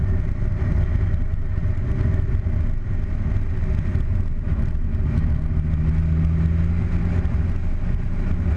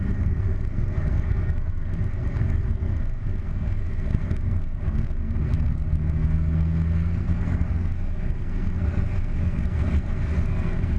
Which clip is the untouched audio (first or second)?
first